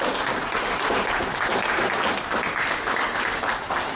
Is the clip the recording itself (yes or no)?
yes